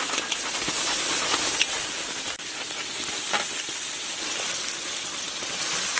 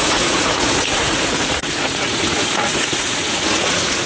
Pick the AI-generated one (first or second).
second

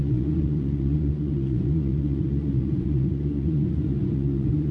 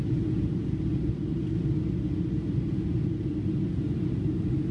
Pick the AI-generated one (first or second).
first